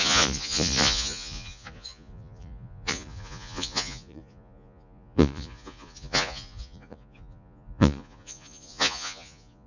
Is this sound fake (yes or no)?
yes